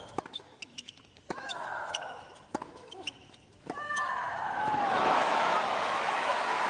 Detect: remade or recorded remade